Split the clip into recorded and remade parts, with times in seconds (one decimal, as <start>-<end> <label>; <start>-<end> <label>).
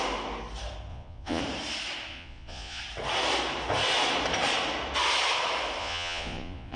0.0-0.9 recorded; 0.9-1.4 remade; 1.4-2.1 recorded; 2.1-2.8 remade; 2.8-5.8 recorded; 5.8-6.8 remade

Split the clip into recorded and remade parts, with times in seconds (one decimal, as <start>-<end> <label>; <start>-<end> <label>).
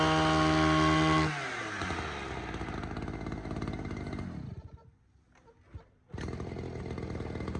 0.0-7.6 recorded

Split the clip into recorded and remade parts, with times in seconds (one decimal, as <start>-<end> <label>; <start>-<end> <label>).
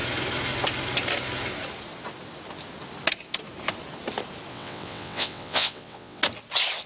0.0-4.5 recorded; 4.5-6.2 remade; 6.2-6.9 recorded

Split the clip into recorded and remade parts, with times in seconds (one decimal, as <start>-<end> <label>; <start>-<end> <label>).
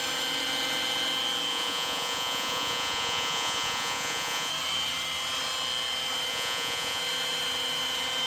0.0-1.5 recorded; 1.5-4.5 remade; 4.5-6.3 recorded; 6.3-7.0 remade; 7.0-8.3 recorded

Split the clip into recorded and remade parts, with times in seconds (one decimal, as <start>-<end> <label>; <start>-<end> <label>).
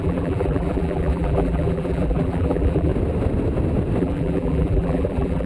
0.0-2.9 remade; 2.9-4.0 recorded; 4.0-5.5 remade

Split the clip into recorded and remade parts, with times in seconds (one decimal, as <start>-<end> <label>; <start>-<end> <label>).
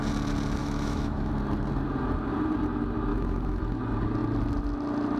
0.0-0.6 recorded; 0.6-1.3 remade; 1.3-3.1 recorded; 3.1-3.8 remade; 3.8-5.2 recorded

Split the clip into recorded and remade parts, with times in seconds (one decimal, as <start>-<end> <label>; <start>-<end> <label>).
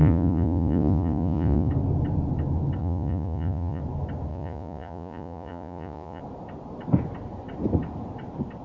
0.0-1.7 remade; 1.7-2.8 recorded; 2.8-3.8 remade; 3.8-4.3 recorded; 4.3-6.2 remade; 6.2-8.6 recorded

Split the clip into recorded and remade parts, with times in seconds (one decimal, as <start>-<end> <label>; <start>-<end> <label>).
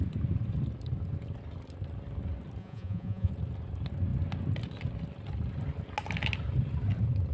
0.0-2.6 recorded; 2.6-3.3 remade; 3.3-7.3 recorded